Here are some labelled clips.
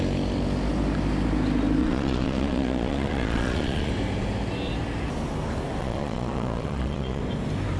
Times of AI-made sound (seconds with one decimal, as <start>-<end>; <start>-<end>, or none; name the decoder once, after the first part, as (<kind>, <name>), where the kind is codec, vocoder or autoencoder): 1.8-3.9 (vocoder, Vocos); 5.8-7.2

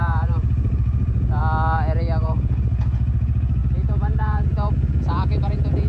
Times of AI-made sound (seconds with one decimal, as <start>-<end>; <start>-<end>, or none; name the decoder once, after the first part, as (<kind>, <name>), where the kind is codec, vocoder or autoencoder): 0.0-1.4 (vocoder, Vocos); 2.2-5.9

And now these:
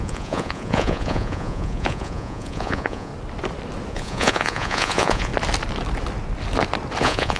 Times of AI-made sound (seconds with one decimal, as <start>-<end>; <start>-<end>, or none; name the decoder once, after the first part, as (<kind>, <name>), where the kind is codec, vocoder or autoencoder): 0.0-3.1 (vocoder, Vocos); 3.9-5.3; 7.0-7.4